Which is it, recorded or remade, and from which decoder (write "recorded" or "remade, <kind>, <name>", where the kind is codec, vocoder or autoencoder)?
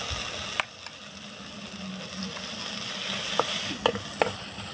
recorded